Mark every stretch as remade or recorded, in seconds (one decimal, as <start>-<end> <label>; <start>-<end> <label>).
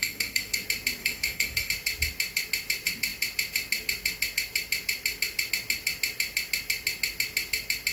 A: 0.0-0.6 remade; 0.6-1.0 recorded; 1.0-1.7 remade; 1.7-7.9 recorded